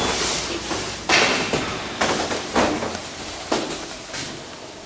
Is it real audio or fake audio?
real